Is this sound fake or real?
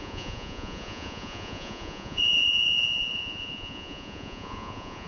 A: fake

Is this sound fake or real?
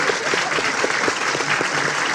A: real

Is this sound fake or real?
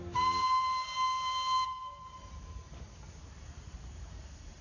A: fake